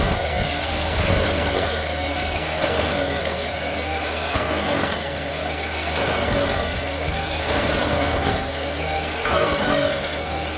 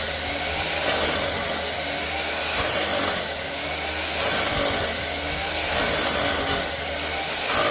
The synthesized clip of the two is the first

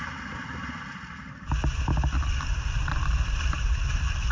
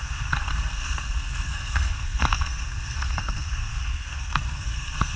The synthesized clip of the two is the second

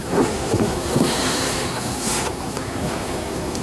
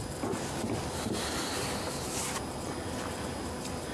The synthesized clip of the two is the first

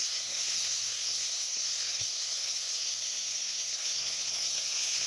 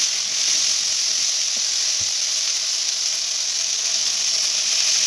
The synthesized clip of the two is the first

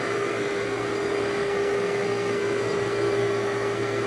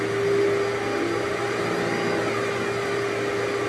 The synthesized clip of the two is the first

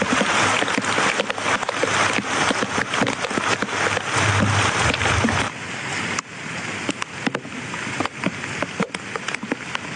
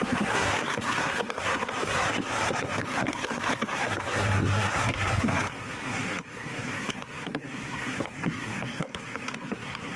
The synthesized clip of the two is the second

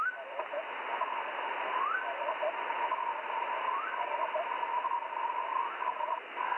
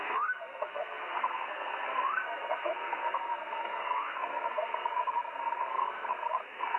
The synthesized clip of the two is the second